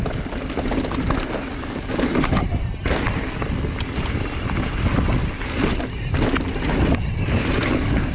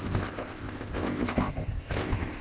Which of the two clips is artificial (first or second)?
second